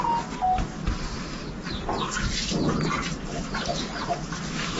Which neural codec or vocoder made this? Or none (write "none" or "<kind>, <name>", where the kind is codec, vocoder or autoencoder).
none